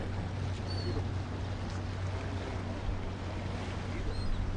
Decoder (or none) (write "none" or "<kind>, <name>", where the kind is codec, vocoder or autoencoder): none